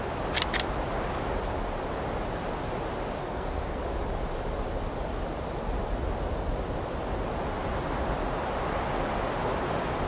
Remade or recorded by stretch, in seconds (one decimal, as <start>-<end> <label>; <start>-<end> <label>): 0.0-3.2 recorded; 3.2-3.8 remade; 3.8-10.1 recorded